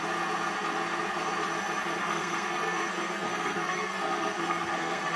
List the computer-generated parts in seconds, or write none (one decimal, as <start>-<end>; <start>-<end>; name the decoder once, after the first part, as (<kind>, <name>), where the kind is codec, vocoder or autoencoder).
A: 2.0-5.2 (codec, SNAC)